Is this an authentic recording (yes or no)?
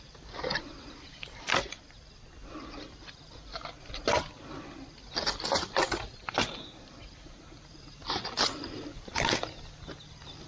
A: yes